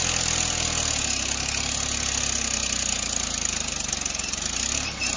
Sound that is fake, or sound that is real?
real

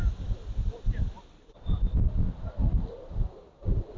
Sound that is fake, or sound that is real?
real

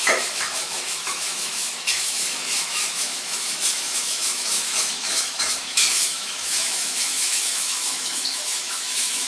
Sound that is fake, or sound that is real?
fake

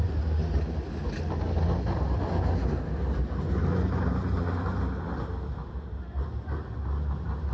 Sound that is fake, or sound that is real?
real